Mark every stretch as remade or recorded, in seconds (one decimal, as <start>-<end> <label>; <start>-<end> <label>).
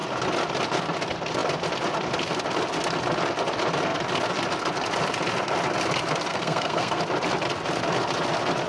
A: 0.0-6.3 recorded; 6.3-7.0 remade; 7.0-8.7 recorded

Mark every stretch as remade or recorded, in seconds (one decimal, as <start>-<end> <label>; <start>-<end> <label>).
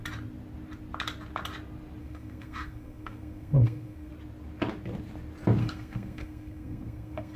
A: 0.0-2.0 recorded; 2.0-4.1 remade; 4.1-5.6 recorded; 5.6-7.4 remade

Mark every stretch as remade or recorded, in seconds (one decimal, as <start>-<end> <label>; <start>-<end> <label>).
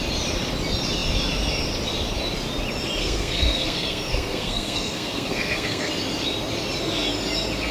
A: 0.0-3.0 recorded; 3.0-5.9 remade; 5.9-7.7 recorded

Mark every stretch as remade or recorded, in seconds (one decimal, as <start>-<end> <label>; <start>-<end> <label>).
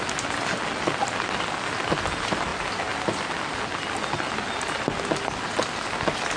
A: 0.0-6.4 recorded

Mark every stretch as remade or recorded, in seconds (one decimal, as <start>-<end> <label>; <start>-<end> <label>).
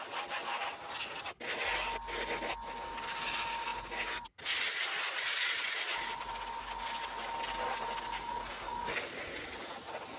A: 0.0-10.2 recorded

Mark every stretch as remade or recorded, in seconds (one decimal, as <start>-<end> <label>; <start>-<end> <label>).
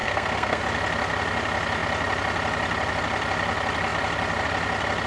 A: 0.0-0.6 remade; 0.6-5.1 recorded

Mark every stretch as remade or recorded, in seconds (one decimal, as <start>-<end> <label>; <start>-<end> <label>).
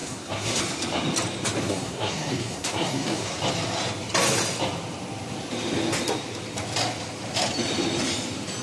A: 0.0-0.6 remade; 0.6-1.6 recorded; 1.6-3.4 remade; 3.4-8.6 recorded